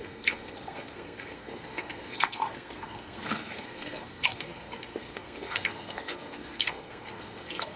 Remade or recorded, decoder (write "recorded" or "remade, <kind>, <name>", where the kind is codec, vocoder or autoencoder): remade, codec, SNAC